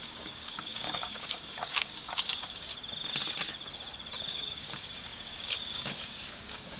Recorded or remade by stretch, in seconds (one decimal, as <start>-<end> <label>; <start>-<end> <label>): 0.0-2.7 remade; 2.7-4.3 recorded; 4.3-6.8 remade